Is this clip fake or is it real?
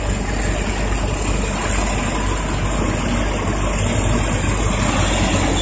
real